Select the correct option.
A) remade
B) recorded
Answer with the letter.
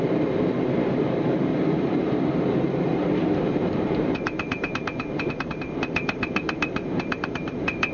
A